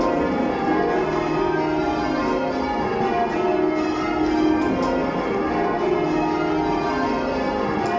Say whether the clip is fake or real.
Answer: real